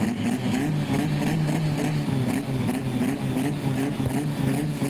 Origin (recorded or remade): recorded